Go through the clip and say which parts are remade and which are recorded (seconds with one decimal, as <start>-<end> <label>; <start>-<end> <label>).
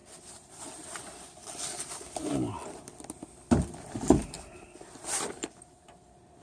0.0-4.2 recorded; 4.2-5.7 remade; 5.7-6.4 recorded